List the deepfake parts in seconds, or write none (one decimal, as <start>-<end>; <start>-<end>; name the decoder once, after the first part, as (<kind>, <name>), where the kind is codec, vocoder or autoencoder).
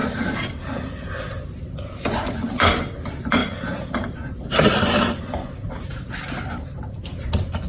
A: none